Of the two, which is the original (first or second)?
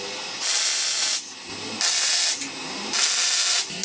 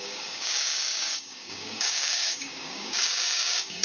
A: first